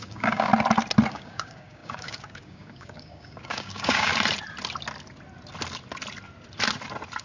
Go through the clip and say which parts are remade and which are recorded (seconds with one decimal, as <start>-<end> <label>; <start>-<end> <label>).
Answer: 0.0-0.5 remade; 0.5-1.1 recorded; 1.1-4.1 remade; 4.1-7.2 recorded